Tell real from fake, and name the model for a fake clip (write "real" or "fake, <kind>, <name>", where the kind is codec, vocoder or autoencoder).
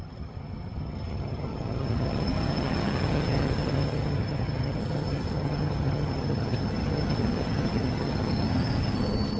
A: fake, vocoder, HiFi-GAN